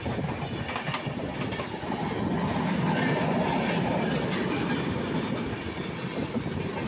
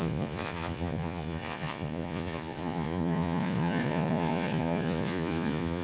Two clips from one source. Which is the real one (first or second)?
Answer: first